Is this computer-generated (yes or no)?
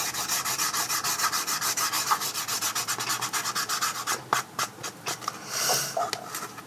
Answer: no